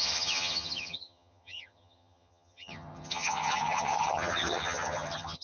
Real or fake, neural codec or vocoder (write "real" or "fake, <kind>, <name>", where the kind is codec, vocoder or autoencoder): fake, vocoder, HiFi-GAN